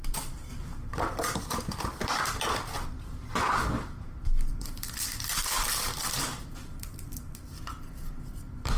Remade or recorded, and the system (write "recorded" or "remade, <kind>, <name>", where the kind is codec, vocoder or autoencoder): remade, vocoder, BigVGAN v2